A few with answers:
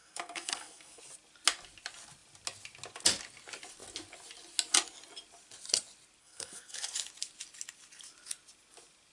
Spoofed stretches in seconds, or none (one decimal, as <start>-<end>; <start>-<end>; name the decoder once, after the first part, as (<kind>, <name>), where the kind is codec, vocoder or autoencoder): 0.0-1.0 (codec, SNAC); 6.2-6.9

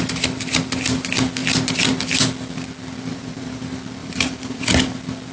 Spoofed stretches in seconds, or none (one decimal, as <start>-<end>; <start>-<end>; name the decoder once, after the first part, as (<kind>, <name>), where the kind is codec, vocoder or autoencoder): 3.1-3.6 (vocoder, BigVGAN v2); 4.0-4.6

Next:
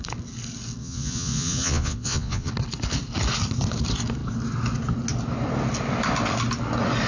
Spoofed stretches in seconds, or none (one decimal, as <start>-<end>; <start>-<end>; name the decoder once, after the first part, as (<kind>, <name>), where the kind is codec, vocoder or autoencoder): 0.8-2.5 (vocoder, Vocos)